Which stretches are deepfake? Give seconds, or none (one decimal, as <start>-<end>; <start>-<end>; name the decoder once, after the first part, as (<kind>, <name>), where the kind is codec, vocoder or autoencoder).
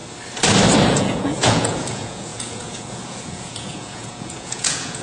0.9-5.0 (vocoder, Vocos)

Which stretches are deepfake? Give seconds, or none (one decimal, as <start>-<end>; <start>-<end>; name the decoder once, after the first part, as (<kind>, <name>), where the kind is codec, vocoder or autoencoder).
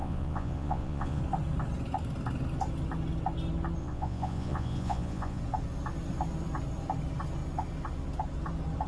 0.0-1.2 (vocoder, Vocos); 3.8-5.4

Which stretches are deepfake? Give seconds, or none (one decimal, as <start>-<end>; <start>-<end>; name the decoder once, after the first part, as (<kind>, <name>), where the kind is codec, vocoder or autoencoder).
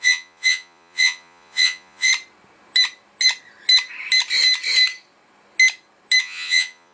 0.0-2.1 (vocoder, Vocos); 6.2-6.9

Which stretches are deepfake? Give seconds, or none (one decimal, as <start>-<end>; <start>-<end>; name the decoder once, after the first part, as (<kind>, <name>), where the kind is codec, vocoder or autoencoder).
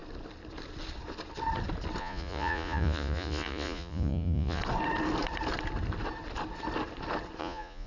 2.0-4.6 (vocoder, Vocos); 7.4-7.9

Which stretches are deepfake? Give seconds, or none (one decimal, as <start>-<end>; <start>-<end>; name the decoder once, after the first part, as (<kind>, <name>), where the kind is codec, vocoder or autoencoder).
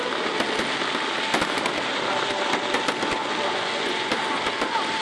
3.5-4.1 (vocoder, Vocos)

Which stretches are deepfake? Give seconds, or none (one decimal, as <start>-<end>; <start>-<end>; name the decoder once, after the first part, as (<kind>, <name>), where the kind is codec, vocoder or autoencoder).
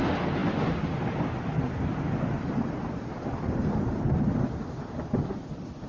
none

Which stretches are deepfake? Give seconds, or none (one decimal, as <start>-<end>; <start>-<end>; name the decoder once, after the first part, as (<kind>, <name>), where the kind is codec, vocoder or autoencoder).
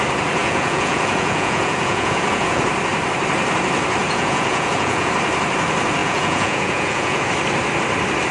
0.4-2.6 (vocoder, Vocos); 4.0-5.1; 6.0-7.3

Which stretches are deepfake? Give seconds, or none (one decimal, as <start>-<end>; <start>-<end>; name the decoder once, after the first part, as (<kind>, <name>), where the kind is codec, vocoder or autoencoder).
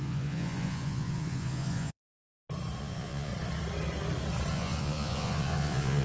0.0-2.1 (vocoder, Vocos); 2.8-3.3; 4.5-6.0